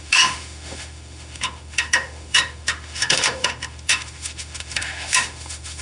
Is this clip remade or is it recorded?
remade